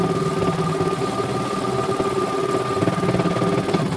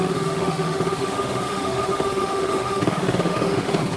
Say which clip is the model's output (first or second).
second